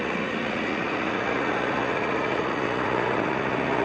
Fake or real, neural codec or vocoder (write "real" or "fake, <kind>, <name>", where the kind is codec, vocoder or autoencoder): fake, vocoder, Vocos